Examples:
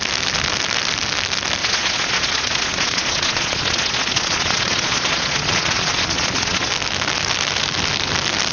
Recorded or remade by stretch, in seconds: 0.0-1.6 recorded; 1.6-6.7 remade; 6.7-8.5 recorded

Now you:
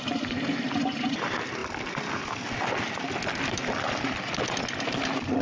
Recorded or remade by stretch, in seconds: 0.0-5.4 recorded

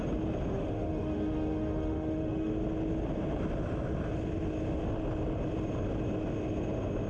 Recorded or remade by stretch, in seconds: 0.0-0.5 recorded; 0.5-2.5 remade; 2.5-7.1 recorded

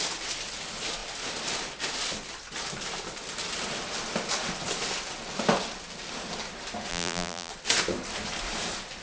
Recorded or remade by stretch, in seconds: 0.0-6.9 recorded; 6.9-7.5 remade; 7.5-9.0 recorded

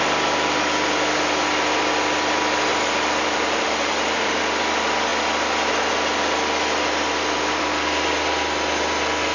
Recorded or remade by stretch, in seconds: 0.0-2.7 recorded; 2.7-4.4 remade; 4.4-9.3 recorded

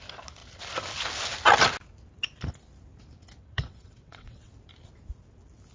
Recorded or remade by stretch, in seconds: 0.0-3.4 recorded; 3.4-4.5 remade; 4.5-5.7 recorded

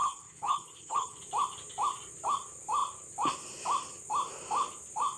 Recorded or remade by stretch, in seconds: 0.0-1.2 remade; 1.2-5.2 recorded

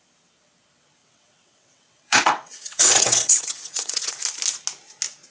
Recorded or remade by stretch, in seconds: 0.0-1.0 recorded; 1.0-4.2 remade; 4.2-5.3 recorded